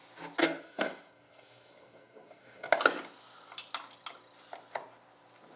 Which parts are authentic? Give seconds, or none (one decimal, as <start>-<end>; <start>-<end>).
0.0-0.4; 2.7-5.6